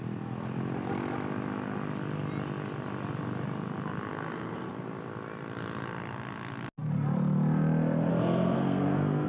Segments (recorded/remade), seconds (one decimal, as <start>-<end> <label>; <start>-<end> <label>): 0.0-4.1 recorded; 4.1-4.7 remade; 4.7-8.1 recorded; 8.1-9.3 remade